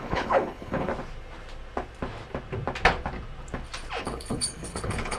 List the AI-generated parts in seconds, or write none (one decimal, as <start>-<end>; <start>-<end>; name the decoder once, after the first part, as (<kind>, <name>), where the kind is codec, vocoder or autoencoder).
0.0-0.9 (codec, HILCodec); 4.0-5.2